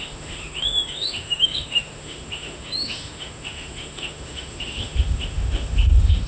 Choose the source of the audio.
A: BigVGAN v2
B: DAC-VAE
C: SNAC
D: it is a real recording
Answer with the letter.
B